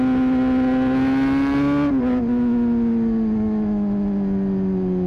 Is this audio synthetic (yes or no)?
no